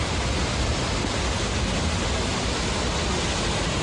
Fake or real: real